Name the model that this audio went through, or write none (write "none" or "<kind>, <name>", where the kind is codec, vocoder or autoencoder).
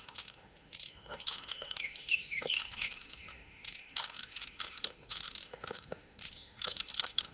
autoencoder, DAC-VAE